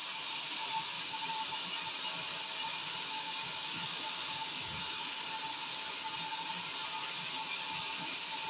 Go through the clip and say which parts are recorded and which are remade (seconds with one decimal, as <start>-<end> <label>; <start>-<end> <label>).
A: 0.0-2.8 recorded; 2.8-5.2 remade; 5.2-8.5 recorded

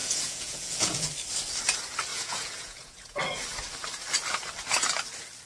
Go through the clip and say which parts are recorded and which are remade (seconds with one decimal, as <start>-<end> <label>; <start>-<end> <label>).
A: 0.0-1.1 remade; 1.1-2.1 recorded; 2.1-3.2 remade; 3.2-5.5 recorded

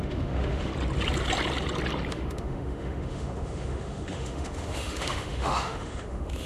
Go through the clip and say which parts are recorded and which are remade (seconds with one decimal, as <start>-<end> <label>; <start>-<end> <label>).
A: 0.0-0.7 remade; 0.7-2.1 recorded; 2.1-6.5 remade

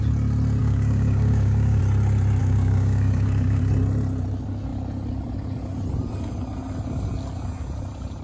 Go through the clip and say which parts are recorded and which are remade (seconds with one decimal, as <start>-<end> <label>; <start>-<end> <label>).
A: 0.0-0.6 recorded; 0.6-1.8 remade; 1.8-2.4 recorded; 2.4-3.6 remade; 3.6-8.2 recorded

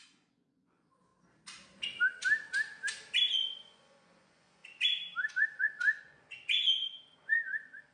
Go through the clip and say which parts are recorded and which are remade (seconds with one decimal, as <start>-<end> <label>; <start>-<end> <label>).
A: 0.0-1.1 remade; 1.1-3.5 recorded; 3.5-4.6 remade; 4.6-5.3 recorded; 5.3-7.9 remade

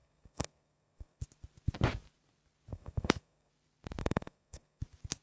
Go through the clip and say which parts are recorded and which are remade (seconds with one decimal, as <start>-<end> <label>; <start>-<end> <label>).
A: 0.0-1.2 remade; 1.2-2.7 recorded; 2.7-3.5 remade; 3.5-4.0 recorded; 4.0-4.8 remade; 4.8-5.2 recorded

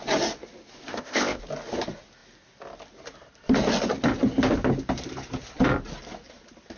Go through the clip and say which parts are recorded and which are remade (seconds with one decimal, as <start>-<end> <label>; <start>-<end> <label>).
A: 0.0-0.9 recorded; 0.9-1.4 remade; 1.4-6.8 recorded